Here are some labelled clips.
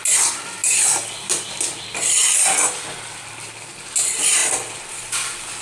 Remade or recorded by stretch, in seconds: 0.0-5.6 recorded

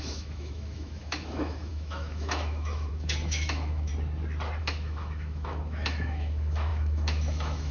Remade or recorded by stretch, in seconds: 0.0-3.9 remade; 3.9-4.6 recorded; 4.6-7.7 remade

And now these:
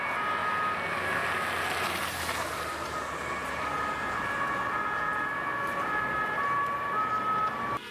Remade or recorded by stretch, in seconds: 0.0-7.9 recorded